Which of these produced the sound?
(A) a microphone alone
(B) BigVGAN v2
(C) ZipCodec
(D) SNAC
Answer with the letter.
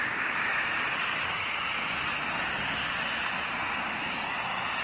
A